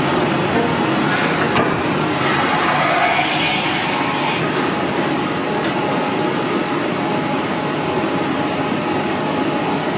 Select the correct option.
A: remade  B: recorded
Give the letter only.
B